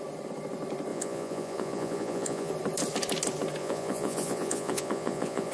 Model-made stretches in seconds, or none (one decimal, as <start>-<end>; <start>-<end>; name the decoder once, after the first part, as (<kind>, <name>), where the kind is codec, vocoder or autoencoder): 0.9-2.5 (vocoder, Vocos); 3.6-5.5